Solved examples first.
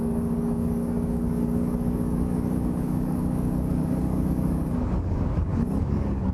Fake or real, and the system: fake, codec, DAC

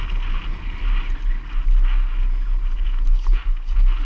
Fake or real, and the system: real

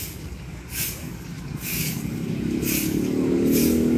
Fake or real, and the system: fake, codec, DAC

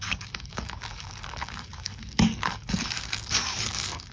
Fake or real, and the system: fake, codec, DAC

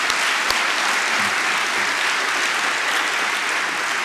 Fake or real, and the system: real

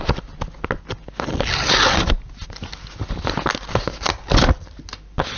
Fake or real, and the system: real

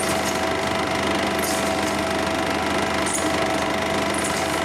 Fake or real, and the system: real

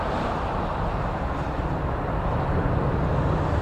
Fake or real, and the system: real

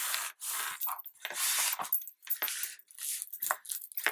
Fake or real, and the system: real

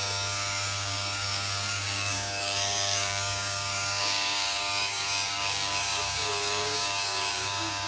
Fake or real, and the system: fake, codec, DAC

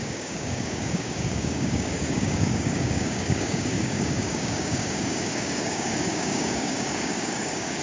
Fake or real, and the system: fake, codec, DAC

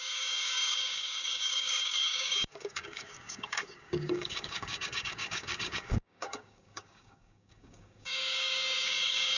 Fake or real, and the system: fake, codec, DAC